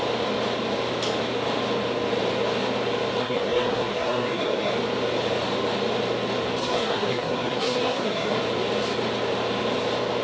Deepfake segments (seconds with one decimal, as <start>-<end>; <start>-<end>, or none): 3.2-4.7; 6.6-8.4